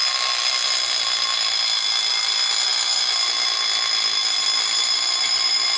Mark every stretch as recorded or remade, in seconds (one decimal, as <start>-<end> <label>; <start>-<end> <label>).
0.0-5.8 recorded